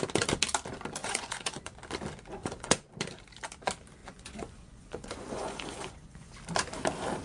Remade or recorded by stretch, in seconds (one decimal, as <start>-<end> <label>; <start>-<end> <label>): 0.0-1.0 recorded; 1.0-1.8 remade; 1.8-2.3 recorded; 2.3-2.9 remade; 2.9-4.0 recorded; 4.0-6.3 remade; 6.3-7.2 recorded